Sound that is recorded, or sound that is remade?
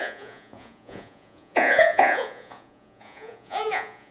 remade